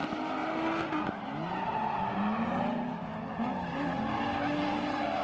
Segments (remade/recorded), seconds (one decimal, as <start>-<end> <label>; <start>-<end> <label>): 0.0-5.2 recorded